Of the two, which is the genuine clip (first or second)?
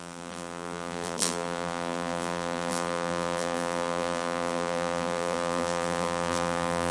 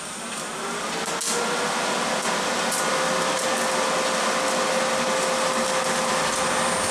second